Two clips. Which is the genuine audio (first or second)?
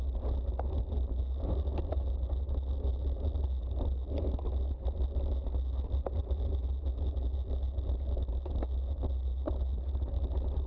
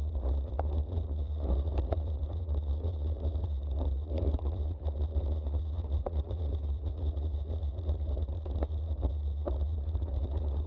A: first